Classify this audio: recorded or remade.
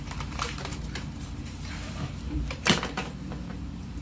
remade